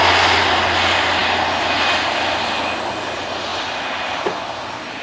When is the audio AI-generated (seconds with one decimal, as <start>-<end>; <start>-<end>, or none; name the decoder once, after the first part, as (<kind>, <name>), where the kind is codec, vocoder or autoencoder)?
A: none